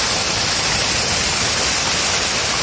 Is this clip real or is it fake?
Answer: real